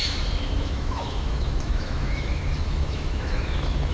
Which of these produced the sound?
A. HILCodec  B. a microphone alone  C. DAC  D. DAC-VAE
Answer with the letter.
D